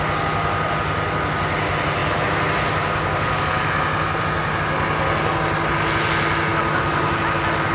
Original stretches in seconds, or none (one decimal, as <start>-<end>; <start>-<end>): 0.0-7.7